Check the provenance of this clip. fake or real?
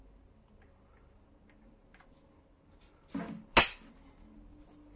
real